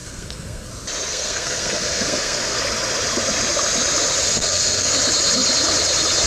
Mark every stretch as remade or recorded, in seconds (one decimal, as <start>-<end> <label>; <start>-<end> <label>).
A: 0.0-0.7 remade; 0.7-1.1 recorded; 1.1-2.6 remade; 2.6-4.2 recorded; 4.2-4.9 remade; 4.9-6.3 recorded